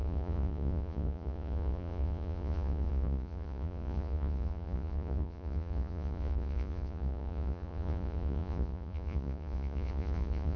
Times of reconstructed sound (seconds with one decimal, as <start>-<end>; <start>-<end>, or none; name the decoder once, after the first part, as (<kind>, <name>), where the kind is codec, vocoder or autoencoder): 0.0-10.6 (vocoder, Vocos)